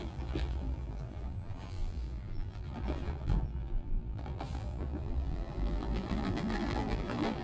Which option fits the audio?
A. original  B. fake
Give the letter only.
B